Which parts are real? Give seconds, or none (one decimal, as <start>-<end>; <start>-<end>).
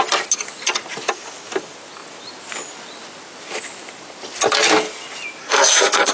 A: 0.0-5.4